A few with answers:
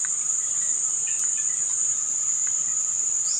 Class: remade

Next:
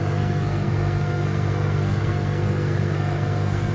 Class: remade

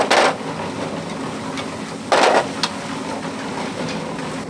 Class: recorded